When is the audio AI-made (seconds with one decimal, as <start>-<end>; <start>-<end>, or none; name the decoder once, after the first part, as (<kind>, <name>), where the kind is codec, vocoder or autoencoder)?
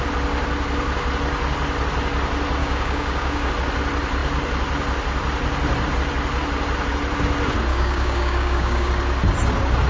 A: 2.6-3.5 (codec, DAC); 7.7-8.9